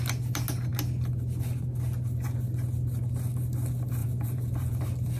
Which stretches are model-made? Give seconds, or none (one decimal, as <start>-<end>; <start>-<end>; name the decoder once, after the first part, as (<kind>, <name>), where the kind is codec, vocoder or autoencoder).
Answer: 4.0-4.8 (vocoder, Vocos)